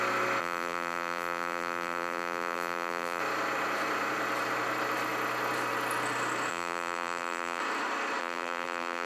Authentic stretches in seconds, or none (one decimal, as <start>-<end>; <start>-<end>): 0.0-0.4; 3.2-6.5; 7.6-8.2